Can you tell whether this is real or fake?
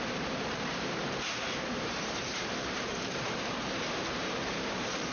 fake